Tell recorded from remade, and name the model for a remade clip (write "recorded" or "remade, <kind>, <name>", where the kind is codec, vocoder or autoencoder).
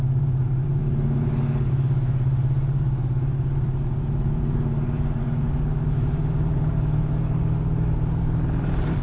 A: remade, vocoder, BigVGAN v2